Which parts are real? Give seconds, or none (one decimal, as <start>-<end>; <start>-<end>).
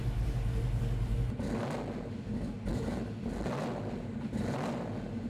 0.0-5.3